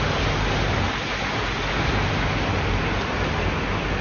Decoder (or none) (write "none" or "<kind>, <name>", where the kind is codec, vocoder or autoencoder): none